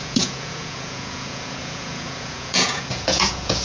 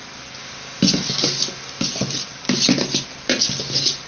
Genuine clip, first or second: second